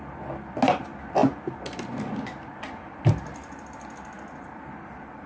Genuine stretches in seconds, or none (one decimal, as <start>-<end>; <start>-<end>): 0.0-5.3